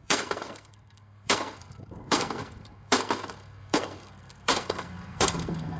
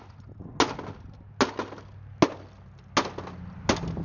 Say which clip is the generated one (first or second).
first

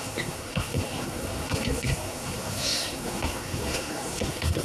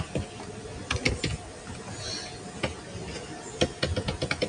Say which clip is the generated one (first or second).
first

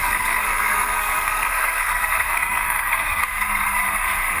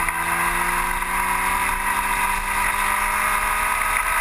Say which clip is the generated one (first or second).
first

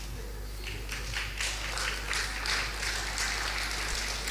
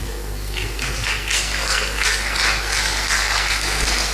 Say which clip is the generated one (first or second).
second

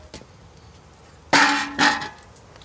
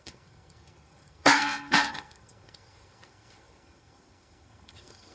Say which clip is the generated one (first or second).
second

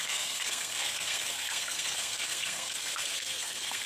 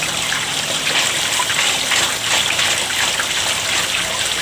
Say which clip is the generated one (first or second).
first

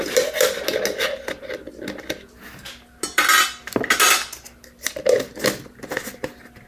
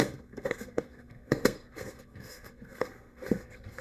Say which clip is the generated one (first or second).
second